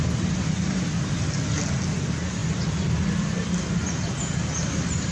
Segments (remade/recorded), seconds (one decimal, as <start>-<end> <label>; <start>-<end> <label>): 0.0-5.1 recorded

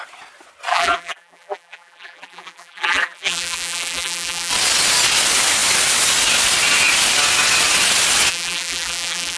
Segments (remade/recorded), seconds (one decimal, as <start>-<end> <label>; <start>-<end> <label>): 0.0-0.7 recorded; 0.7-4.5 remade; 4.5-8.3 recorded; 8.3-9.4 remade

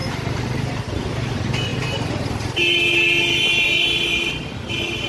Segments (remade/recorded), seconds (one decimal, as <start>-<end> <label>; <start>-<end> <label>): 0.0-0.6 recorded; 0.6-1.7 remade; 1.7-5.1 recorded

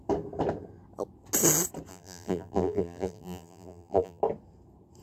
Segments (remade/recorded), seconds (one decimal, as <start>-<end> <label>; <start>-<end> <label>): 0.0-1.9 recorded; 1.9-4.2 remade; 4.2-5.0 recorded

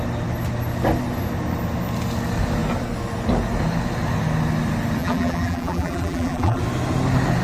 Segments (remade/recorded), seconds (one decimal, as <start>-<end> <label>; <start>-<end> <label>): 0.0-5.0 recorded; 5.0-6.6 remade; 6.6-7.4 recorded

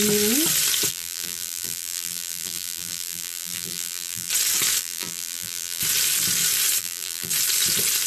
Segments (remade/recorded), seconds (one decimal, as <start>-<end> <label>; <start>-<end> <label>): 0.0-0.9 recorded; 0.9-4.3 remade; 4.3-4.8 recorded; 4.8-5.8 remade; 5.8-6.8 recorded; 6.8-7.3 remade; 7.3-8.1 recorded

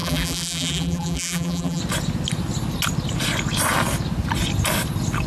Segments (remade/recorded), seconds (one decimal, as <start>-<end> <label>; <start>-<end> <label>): 0.0-1.8 remade; 1.8-5.3 recorded

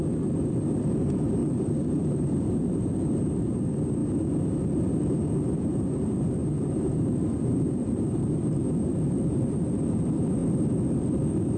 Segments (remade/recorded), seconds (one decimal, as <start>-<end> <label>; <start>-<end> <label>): 0.0-1.4 recorded; 1.4-3.2 remade; 3.2-6.4 recorded; 6.4-8.4 remade; 8.4-11.6 recorded